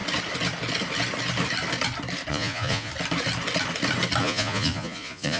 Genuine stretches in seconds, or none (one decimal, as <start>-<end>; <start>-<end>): 0.0-2.3; 2.9-4.2